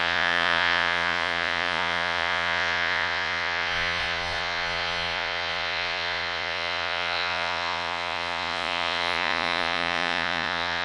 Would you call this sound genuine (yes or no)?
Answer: no